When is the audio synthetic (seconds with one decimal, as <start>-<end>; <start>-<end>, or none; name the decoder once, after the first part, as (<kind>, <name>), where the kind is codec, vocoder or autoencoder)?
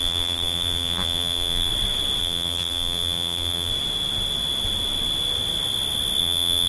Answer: 0.0-1.7 (vocoder, BigVGAN v2); 2.2-3.7; 6.2-6.7